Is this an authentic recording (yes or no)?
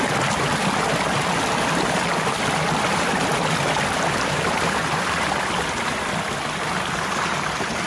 yes